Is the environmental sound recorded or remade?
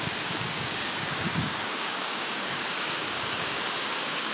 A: remade